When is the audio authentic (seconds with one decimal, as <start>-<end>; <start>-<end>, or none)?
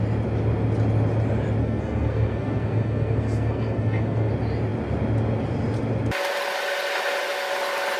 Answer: 0.0-1.6; 4.3-8.0